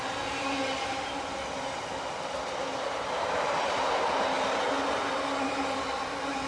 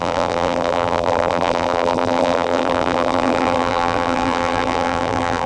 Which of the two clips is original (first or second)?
first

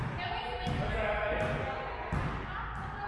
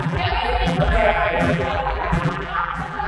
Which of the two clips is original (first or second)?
first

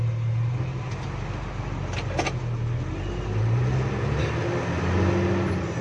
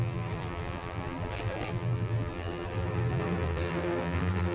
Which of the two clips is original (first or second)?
first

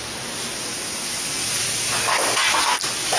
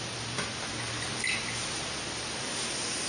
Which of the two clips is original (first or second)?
first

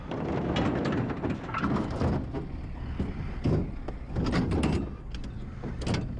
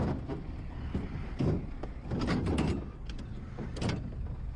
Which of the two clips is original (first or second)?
first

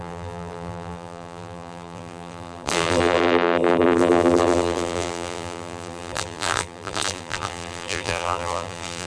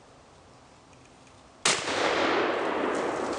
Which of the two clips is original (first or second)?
second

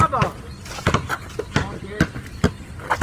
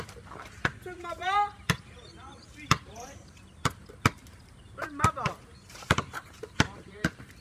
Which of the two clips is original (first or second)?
first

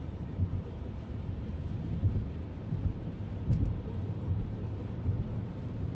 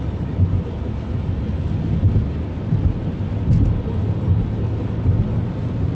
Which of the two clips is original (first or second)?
second